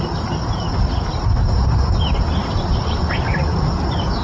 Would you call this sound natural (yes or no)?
yes